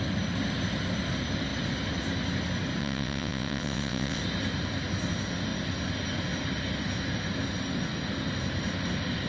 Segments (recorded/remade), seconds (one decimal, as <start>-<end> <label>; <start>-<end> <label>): 0.0-2.8 recorded; 2.8-4.2 remade; 4.2-9.3 recorded